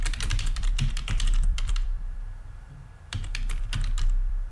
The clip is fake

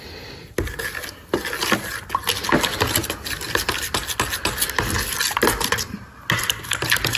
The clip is real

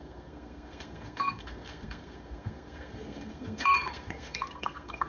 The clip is fake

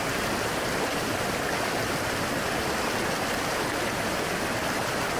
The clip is real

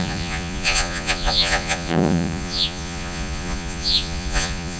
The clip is fake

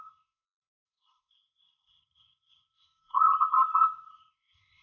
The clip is fake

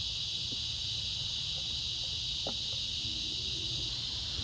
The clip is real